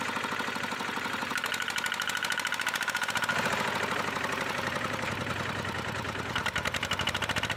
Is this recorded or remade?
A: remade